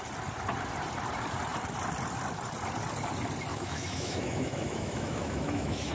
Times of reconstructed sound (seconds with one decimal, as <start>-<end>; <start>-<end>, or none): 3.5-5.9